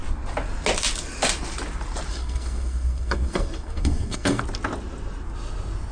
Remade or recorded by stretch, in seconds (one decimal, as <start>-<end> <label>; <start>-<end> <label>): 0.0-2.1 recorded; 2.1-4.4 remade; 4.4-5.9 recorded